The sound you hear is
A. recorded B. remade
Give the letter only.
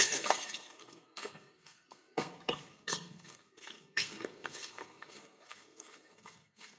B